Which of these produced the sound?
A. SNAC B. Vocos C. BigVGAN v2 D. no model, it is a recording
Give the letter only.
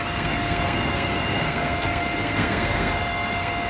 A